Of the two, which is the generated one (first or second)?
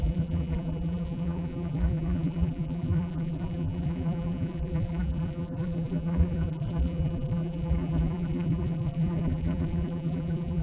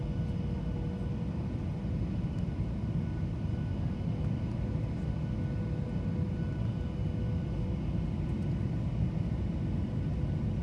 first